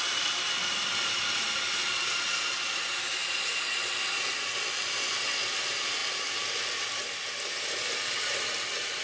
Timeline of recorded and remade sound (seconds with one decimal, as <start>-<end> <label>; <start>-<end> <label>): 0.0-9.0 recorded